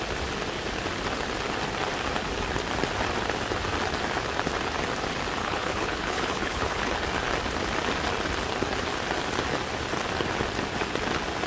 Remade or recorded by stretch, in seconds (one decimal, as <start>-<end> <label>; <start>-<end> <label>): 0.0-5.4 recorded; 5.4-6.9 remade; 6.9-11.5 recorded